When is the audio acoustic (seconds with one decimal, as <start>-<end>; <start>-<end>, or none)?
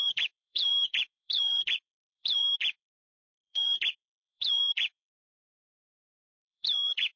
none